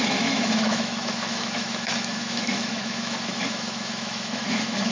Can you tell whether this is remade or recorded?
remade